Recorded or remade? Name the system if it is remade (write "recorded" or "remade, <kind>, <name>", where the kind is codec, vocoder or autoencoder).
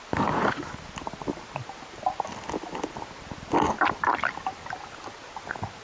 recorded